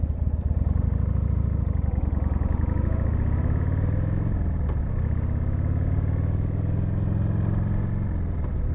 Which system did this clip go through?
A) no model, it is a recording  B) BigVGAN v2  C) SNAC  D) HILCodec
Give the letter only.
A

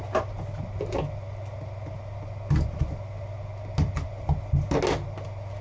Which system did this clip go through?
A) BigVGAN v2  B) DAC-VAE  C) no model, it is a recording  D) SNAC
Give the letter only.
C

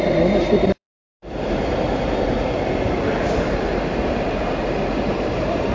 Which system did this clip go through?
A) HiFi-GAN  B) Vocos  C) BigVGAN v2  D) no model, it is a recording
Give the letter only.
C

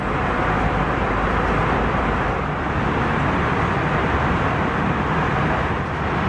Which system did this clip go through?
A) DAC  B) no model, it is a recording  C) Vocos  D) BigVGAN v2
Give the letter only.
D